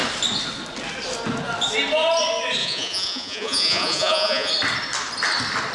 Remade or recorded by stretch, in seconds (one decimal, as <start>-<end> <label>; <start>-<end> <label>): 0.0-2.6 recorded; 2.6-4.5 remade; 4.5-5.7 recorded